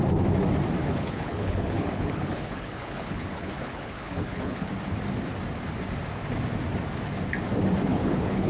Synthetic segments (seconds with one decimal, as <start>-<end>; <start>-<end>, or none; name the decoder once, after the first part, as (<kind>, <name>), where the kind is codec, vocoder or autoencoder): 0.8-4.7 (codec, HILCodec); 7.9-8.5